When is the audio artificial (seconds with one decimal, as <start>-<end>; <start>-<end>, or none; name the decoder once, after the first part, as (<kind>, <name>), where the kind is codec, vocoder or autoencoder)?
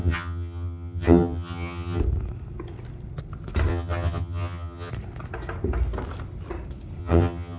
0.0-2.0 (vocoder, HiFi-GAN); 3.7-4.9; 7.0-7.6